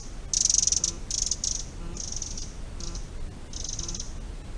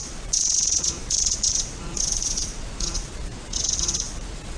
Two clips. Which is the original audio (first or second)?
first